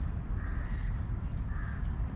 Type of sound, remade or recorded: recorded